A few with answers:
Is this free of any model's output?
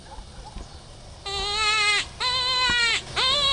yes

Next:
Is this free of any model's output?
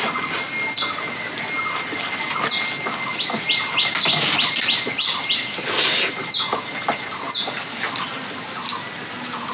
yes